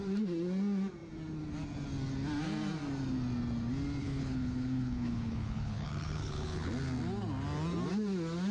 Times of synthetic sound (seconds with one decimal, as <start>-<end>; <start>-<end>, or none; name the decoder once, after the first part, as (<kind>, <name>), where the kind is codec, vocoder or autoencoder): 4.0-6.7 (codec, HILCodec)